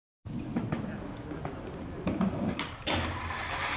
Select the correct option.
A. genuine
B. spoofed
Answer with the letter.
A